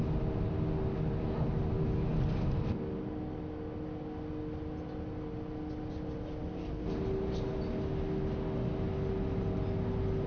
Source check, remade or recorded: recorded